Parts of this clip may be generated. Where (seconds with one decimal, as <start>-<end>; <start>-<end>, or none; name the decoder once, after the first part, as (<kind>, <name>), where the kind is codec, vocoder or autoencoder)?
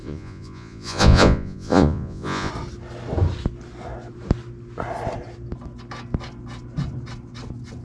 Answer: 0.0-2.5 (vocoder, Vocos)